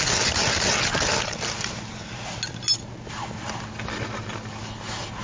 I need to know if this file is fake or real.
real